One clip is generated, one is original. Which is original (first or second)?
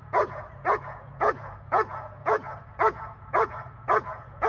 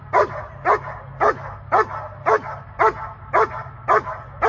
second